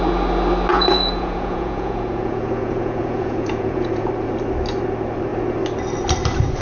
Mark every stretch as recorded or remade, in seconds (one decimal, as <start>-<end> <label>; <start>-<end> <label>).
0.0-0.7 recorded; 0.7-4.1 remade; 4.1-6.6 recorded